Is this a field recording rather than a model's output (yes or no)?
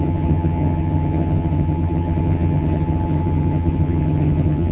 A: no